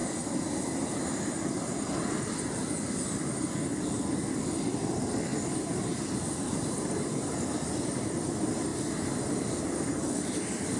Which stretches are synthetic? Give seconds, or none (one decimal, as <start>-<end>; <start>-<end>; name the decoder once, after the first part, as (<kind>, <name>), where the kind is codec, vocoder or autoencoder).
4.4-10.8 (vocoder, BigVGAN v2)